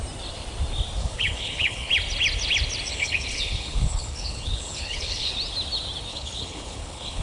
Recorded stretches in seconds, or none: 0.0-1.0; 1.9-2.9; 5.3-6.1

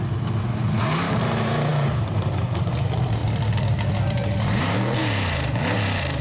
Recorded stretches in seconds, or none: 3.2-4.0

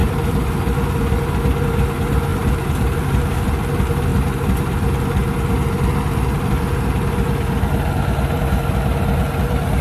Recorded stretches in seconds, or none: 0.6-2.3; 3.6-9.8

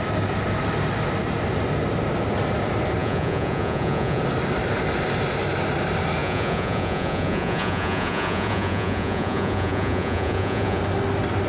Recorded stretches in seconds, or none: 0.0-3.0; 4.2-6.2; 10.8-11.5

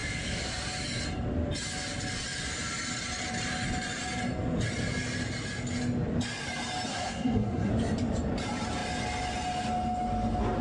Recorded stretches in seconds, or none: 0.0-6.9; 7.7-10.6